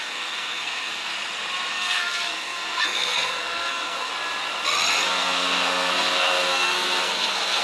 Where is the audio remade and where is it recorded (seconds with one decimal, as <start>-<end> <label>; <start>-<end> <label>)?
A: 0.0-1.1 remade; 1.1-1.7 recorded; 1.7-4.1 remade; 4.1-5.1 recorded; 5.1-7.6 remade